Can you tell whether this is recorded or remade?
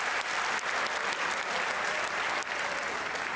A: recorded